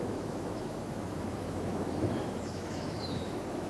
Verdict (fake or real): fake